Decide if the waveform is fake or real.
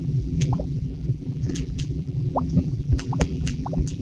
fake